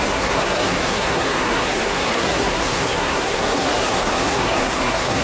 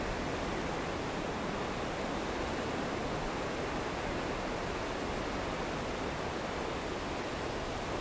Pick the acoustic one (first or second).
second